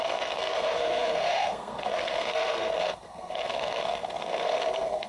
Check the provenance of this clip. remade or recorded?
remade